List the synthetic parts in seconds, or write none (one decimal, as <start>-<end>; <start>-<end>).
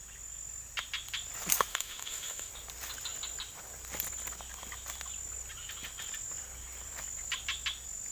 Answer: 1.7-2.5